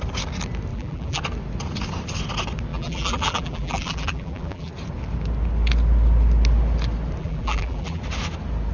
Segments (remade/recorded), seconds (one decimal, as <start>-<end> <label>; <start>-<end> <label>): 0.0-0.7 recorded; 0.7-1.2 remade; 1.2-2.7 recorded; 2.7-4.7 remade; 4.7-7.2 recorded; 7.2-8.0 remade; 8.0-8.7 recorded